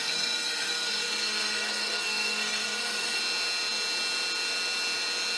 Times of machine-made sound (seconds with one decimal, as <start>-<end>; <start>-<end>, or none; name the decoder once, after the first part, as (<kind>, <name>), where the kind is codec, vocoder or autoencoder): 0.0-3.2 (codec, SNAC)